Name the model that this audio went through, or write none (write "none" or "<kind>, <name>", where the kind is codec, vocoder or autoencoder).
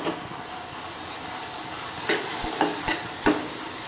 vocoder, BigVGAN v2